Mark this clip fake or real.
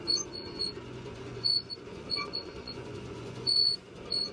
fake